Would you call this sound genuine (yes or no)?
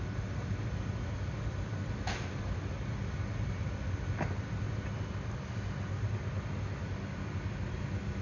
yes